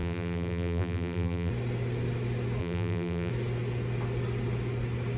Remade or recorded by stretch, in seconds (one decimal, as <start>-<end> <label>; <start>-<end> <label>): 0.0-1.5 remade; 1.5-2.6 recorded; 2.6-3.3 remade; 3.3-5.2 recorded